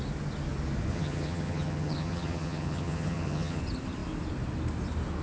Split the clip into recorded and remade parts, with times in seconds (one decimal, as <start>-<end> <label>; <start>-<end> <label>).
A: 0.0-0.9 recorded; 0.9-3.6 remade; 3.6-5.2 recorded